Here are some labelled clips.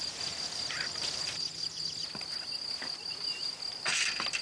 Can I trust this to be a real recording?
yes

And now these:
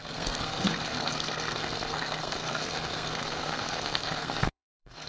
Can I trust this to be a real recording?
no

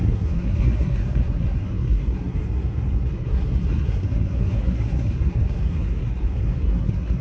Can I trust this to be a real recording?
no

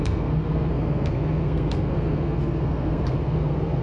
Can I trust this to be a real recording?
no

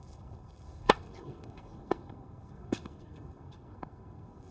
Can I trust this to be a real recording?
no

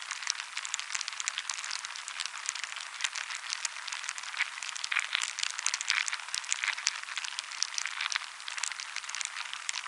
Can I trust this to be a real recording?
yes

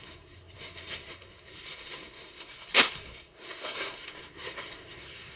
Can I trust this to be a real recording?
no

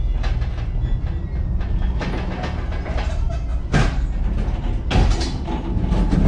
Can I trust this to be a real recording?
yes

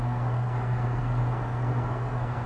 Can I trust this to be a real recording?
no